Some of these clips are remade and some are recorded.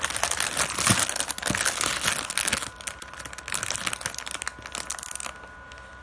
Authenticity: recorded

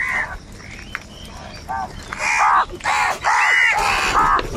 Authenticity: recorded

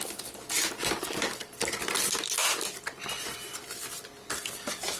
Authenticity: recorded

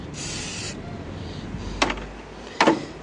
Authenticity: remade